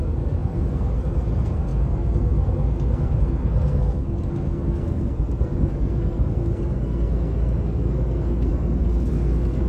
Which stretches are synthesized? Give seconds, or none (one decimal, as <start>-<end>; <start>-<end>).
0.0-9.7